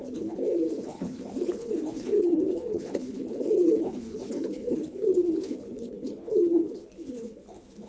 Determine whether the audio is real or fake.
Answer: fake